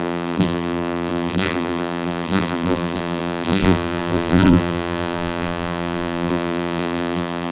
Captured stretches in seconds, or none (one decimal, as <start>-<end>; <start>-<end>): none